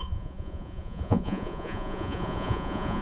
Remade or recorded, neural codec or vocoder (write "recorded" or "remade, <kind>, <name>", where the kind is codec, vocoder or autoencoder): remade, vocoder, Vocos